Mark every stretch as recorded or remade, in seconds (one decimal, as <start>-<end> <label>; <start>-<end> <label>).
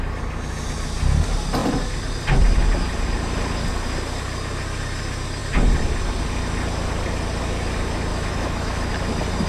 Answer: 0.0-8.1 recorded; 8.1-8.9 remade; 8.9-9.5 recorded